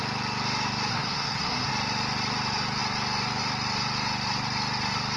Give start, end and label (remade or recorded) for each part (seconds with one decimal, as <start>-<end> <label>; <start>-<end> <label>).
0.0-0.9 recorded; 0.9-1.7 remade; 1.7-5.2 recorded